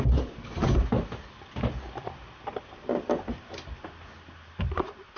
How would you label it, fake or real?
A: real